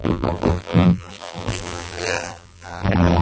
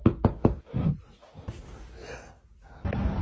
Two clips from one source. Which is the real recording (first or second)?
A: second